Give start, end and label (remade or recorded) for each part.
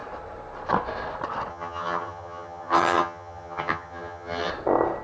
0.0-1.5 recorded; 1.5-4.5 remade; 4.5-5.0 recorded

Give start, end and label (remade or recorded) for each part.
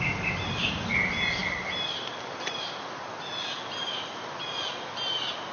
0.0-5.5 recorded